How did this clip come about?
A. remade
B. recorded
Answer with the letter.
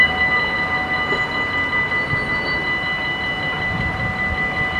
B